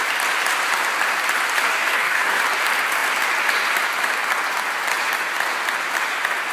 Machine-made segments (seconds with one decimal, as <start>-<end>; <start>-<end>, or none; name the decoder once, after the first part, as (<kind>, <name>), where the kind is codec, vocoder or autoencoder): 1.7-2.4 (codec, DAC)